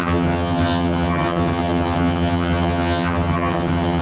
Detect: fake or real fake